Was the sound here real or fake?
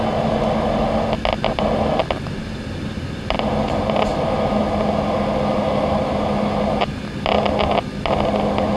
real